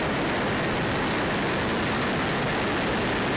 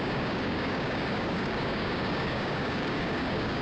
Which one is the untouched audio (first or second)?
first